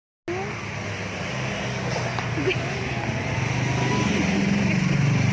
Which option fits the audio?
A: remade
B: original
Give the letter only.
B